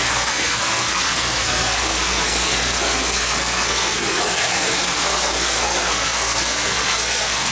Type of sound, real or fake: fake